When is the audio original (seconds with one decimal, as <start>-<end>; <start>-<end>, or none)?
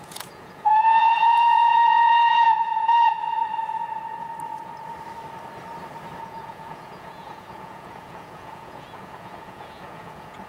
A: 3.2-6.2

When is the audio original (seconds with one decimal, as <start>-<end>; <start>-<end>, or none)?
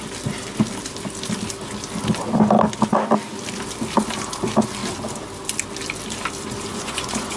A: 0.0-6.7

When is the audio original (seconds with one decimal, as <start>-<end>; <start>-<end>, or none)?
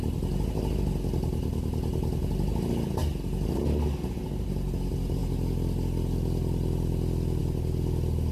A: 0.0-8.3